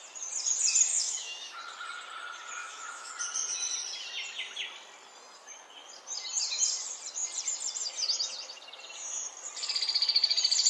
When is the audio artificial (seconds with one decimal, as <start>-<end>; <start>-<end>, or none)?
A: 0.9-1.6; 2.6-3.1

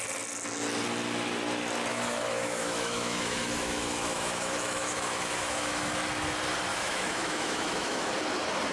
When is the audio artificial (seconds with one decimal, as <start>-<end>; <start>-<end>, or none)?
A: 1.9-6.0; 6.7-8.1

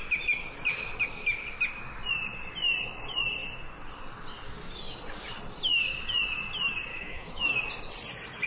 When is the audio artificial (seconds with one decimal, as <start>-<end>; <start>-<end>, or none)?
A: 6.9-7.6

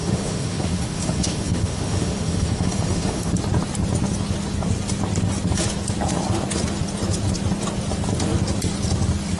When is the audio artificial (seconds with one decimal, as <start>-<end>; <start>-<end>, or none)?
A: 0.0-3.3

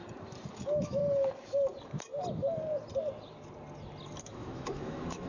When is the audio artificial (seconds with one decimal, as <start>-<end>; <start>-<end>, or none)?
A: 0.5-1.0; 4.2-5.3

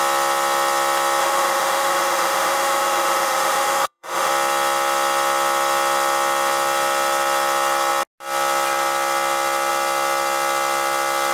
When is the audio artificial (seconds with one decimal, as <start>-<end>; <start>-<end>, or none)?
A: 1.2-4.3